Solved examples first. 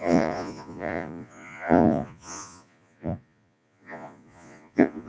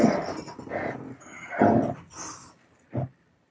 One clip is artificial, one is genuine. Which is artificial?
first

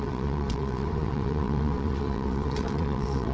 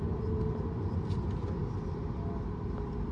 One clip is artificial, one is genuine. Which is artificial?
first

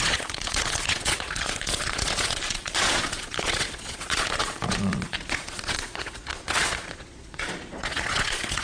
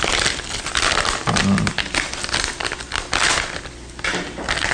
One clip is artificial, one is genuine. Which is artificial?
first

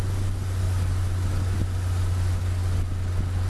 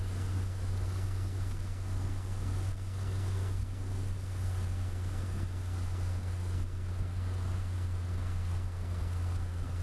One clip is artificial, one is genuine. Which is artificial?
second